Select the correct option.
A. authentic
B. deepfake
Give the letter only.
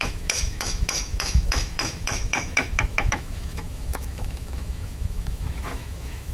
B